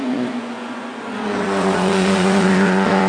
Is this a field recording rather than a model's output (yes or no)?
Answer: no